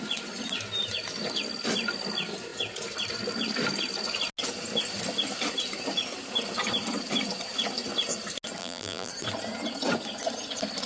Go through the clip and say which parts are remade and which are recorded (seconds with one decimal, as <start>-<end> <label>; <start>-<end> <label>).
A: 0.0-8.6 recorded; 8.6-9.1 remade; 9.1-10.9 recorded

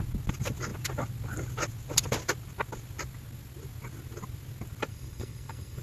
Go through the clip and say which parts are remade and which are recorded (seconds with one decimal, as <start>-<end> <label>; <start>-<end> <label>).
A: 0.0-4.9 recorded; 4.9-5.8 remade

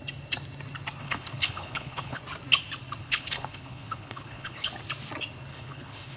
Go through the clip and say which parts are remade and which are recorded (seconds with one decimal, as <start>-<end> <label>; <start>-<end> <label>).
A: 0.0-1.0 recorded; 1.0-2.2 remade; 2.2-3.0 recorded; 3.0-4.7 remade; 4.7-5.5 recorded; 5.5-6.2 remade

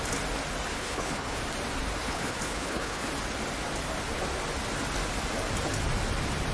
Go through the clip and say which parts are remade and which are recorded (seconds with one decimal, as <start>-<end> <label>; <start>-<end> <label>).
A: 0.0-0.7 recorded; 0.7-1.4 remade; 1.4-2.0 recorded; 2.0-3.1 remade; 3.1-6.5 recorded

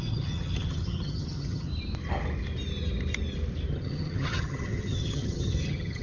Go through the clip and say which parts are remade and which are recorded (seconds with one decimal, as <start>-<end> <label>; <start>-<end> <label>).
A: 0.0-1.7 remade; 1.7-3.7 recorded; 3.7-6.0 remade

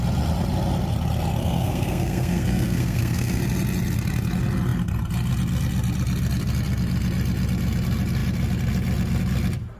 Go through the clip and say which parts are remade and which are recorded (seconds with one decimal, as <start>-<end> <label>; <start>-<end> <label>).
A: 0.0-1.4 recorded; 1.4-3.4 remade; 3.4-9.8 recorded

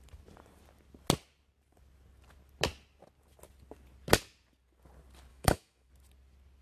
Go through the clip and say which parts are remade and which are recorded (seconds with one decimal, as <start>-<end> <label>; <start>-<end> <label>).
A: 0.0-5.3 recorded; 5.3-5.9 remade; 5.9-6.6 recorded